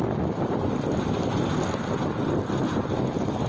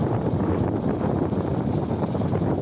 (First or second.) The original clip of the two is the first